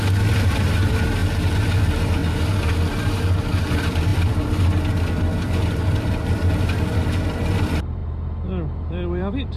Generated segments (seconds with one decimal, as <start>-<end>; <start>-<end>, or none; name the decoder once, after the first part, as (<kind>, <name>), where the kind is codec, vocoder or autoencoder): 0.0-2.2 (vocoder, BigVGAN v2); 2.7-8.0; 8.9-9.6